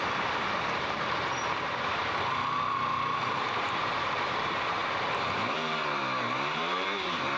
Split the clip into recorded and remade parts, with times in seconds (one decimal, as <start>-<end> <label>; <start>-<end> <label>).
0.0-7.4 remade